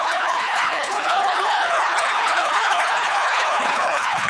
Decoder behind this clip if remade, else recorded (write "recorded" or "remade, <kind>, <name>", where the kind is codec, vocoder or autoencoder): remade, codec, HILCodec